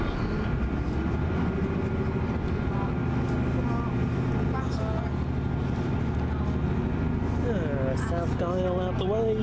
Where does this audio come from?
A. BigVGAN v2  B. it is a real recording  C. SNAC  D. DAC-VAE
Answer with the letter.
B